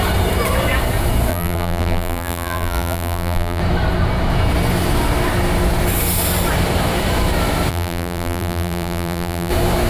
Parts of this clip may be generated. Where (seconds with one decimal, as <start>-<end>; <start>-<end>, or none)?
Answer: 1.3-3.6; 7.7-9.5

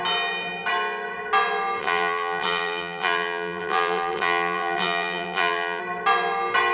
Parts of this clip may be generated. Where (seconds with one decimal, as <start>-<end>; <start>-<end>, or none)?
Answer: 1.8-5.8

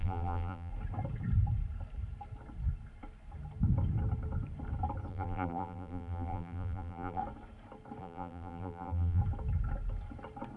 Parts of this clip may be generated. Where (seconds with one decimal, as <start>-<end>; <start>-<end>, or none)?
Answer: 0.0-0.7; 5.1-7.2; 8.0-9.2

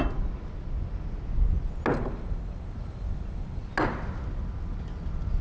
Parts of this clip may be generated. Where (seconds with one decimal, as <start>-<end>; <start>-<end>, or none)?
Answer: 1.9-3.7

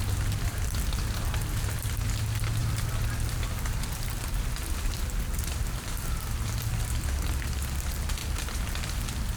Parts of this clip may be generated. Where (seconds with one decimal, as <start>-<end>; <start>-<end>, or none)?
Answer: 2.6-6.8

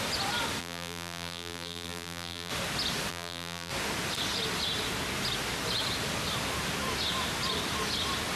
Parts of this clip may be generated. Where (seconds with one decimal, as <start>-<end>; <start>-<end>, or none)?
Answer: 0.6-2.5; 3.1-3.7

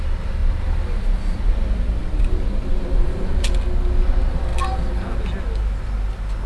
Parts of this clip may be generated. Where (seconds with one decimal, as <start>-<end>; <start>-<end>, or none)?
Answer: none